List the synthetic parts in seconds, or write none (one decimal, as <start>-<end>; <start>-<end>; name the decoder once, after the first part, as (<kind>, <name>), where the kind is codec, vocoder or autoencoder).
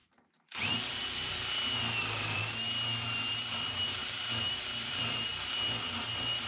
0.0-2.4 (vocoder, BigVGAN v2); 4.0-5.3